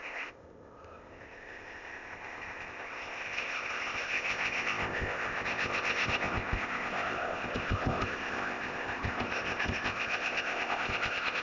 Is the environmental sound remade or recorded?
remade